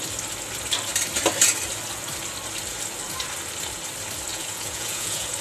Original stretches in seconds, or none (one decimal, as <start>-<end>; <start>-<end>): 0.0-4.3